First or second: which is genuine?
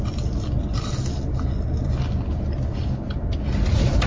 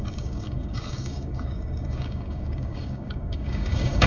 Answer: first